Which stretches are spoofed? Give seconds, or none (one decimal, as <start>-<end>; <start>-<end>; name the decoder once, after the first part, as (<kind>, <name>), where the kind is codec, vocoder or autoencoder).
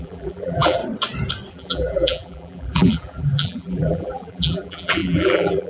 0.0-0.8 (vocoder, BigVGAN v2); 1.5-5.7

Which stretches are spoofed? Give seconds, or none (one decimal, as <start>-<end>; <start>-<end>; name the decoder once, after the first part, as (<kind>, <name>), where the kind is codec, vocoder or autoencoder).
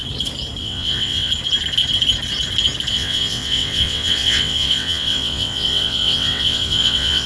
0.6-1.3 (vocoder, WaveNeXt); 2.9-7.3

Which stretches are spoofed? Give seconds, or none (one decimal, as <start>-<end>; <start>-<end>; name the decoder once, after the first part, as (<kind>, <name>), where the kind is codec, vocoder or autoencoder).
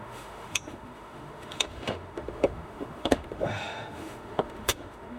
0.0-5.2 (autoencoder, DAC-VAE)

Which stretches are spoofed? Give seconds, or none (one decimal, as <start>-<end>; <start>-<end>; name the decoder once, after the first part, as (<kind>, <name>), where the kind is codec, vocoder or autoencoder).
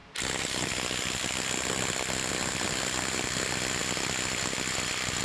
none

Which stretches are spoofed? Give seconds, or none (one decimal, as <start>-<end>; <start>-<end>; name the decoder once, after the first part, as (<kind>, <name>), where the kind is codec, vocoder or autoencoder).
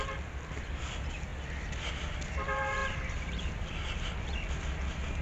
none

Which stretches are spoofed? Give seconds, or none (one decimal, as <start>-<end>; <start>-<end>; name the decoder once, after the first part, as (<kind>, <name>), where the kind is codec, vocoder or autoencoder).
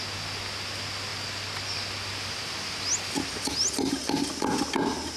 none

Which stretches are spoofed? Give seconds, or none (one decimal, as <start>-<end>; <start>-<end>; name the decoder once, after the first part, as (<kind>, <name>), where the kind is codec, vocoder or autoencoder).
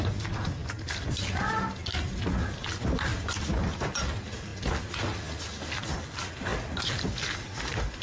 none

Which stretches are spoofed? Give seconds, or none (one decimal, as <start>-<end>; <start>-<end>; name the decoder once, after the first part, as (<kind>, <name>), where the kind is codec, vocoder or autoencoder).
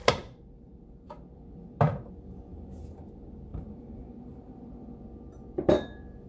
0.0-2.1 (vocoder, BigVGAN v2); 2.5-3.1; 3.5-4.7